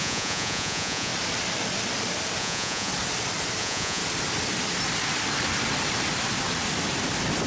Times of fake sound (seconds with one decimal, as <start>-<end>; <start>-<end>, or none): 0.0-1.1; 2.4-2.9; 3.6-4.0